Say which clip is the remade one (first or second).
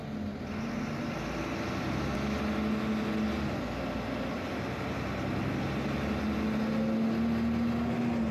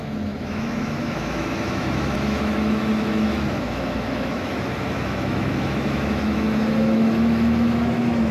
second